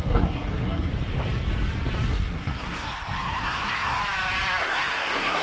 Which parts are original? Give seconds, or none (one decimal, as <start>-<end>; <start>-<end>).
0.9-2.1; 4.0-4.6